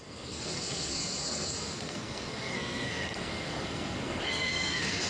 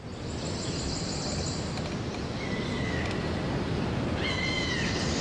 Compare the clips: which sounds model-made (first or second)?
first